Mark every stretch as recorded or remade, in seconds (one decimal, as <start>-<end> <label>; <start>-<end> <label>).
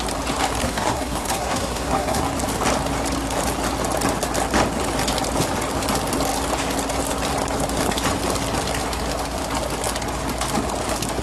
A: 0.0-0.6 recorded; 0.6-2.2 remade; 2.2-11.2 recorded